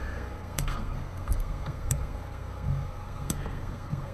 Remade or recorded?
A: remade